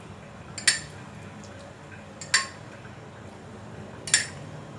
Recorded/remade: recorded